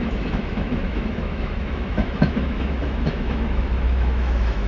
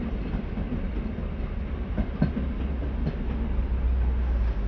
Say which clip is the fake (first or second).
first